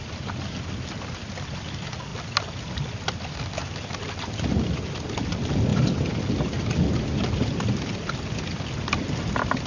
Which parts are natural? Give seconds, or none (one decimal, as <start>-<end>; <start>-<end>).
0.0-2.1; 3.1-5.7; 6.3-9.7